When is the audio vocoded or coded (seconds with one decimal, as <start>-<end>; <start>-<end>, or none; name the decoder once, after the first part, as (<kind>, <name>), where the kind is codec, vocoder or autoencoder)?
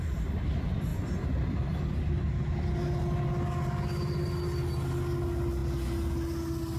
none